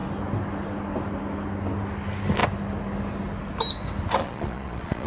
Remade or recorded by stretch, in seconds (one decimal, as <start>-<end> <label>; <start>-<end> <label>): 0.0-4.2 recorded; 4.2-5.1 remade